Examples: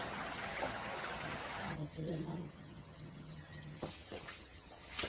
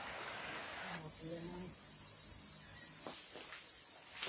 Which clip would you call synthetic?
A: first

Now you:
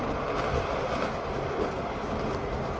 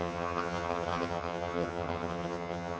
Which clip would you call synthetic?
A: second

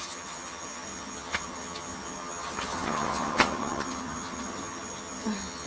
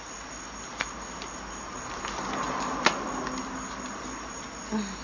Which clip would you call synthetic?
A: first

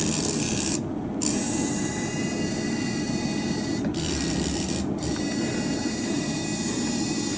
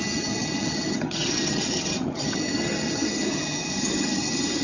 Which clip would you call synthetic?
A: second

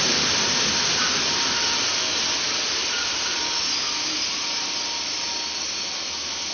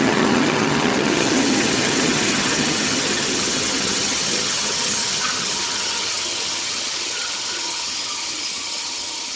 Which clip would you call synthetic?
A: second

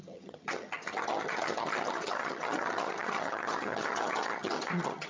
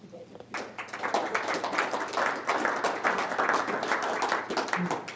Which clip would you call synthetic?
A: first